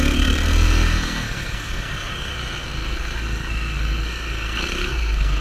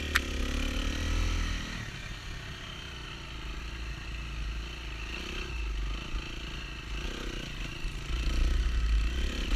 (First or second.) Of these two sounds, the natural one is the second